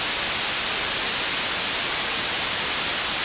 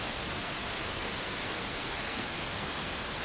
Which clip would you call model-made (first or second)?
second